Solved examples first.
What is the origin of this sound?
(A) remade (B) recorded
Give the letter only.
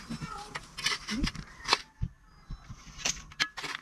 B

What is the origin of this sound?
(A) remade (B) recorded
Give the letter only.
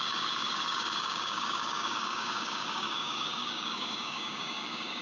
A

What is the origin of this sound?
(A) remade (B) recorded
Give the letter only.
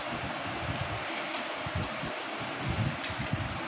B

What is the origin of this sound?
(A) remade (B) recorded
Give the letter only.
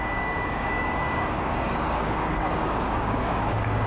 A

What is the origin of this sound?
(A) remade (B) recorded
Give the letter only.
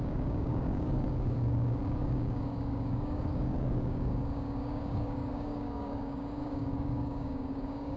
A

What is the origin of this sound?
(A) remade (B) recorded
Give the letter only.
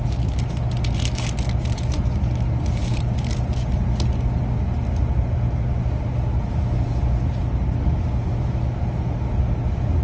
B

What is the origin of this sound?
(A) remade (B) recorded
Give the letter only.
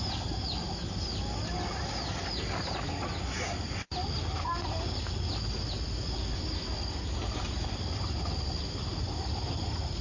B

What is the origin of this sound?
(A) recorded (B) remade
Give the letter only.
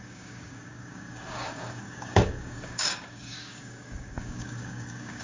B